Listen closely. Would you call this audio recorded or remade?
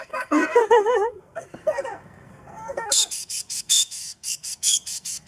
remade